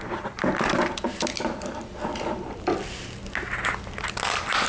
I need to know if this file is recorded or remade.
recorded